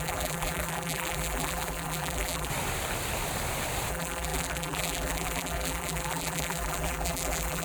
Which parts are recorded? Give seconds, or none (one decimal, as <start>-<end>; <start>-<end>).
2.5-3.9